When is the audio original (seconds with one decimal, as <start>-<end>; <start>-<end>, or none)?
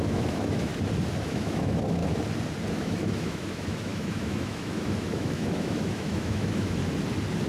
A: 0.7-1.2; 2.0-2.7; 6.8-7.5